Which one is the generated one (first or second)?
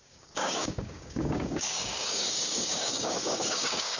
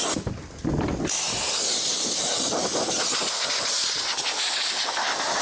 first